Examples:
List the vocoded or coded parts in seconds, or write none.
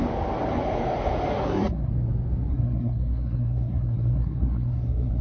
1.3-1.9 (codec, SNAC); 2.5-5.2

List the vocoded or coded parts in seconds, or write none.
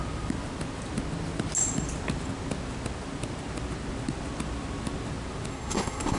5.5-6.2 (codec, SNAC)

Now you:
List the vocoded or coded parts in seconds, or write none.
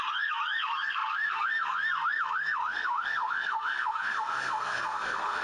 0.0-5.4 (codec, SNAC)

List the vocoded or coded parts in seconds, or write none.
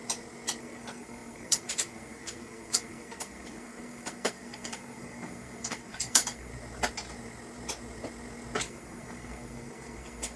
0.6-6.5 (codec, SNAC); 8.6-10.4